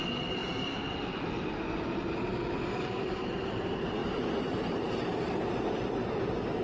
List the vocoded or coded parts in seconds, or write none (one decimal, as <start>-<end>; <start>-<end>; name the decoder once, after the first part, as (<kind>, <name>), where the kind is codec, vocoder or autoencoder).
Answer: 4.0-5.8 (vocoder, BigVGAN v2)